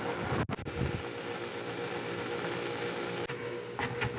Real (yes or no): yes